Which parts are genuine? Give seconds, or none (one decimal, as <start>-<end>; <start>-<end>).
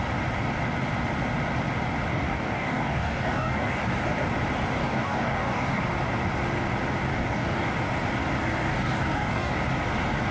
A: 0.0-2.1; 3.8-4.8; 5.8-7.1; 7.7-8.7; 9.5-10.3